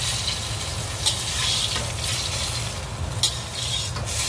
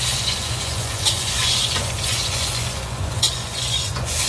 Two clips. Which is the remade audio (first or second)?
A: second